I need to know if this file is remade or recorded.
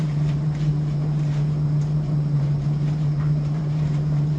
remade